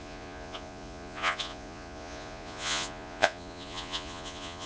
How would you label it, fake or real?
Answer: fake